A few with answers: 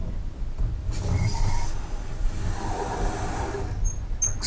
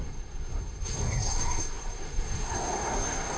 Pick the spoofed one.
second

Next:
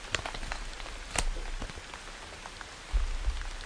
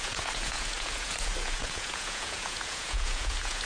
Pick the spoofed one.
second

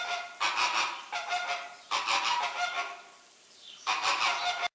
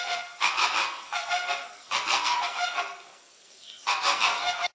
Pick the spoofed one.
second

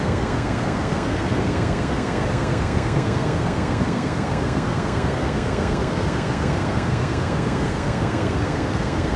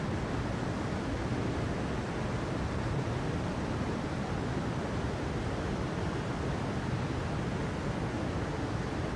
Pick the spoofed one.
first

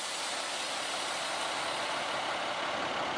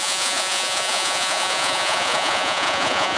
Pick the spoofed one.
second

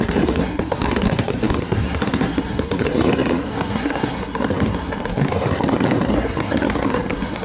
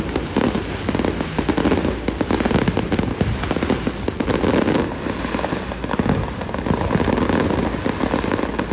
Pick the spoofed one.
first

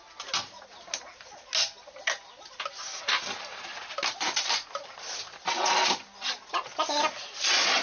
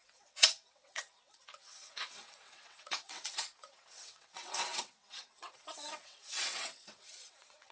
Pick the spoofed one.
second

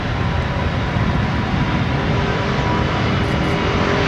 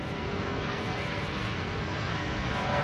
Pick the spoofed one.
second